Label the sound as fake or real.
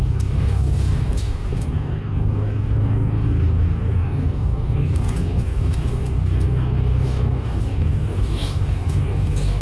fake